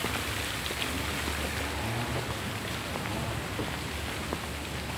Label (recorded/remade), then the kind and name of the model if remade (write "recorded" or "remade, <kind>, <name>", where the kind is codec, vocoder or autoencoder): recorded